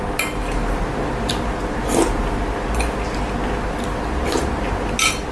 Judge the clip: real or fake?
real